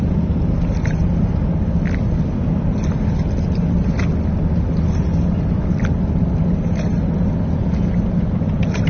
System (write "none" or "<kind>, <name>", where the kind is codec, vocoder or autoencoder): none